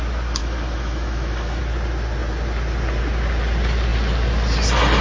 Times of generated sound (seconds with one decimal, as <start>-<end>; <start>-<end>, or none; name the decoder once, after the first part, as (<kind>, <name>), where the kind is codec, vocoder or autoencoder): 0.4-1.6 (autoencoder, DAC-VAE)